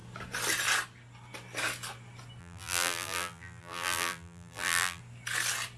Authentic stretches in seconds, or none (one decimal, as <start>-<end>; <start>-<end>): 0.0-2.4; 5.0-5.8